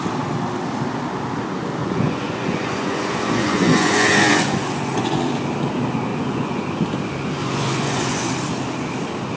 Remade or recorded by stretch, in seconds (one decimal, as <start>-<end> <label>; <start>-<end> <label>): 0.0-1.8 recorded; 1.8-5.2 remade; 5.2-6.1 recorded; 6.1-6.6 remade; 6.6-7.4 recorded; 7.4-8.3 remade; 8.3-9.4 recorded